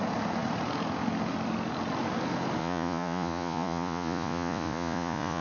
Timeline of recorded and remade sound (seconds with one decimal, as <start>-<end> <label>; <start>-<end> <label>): 0.0-2.6 recorded; 2.6-5.4 remade